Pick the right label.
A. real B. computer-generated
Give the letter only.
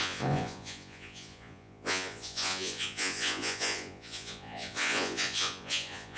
B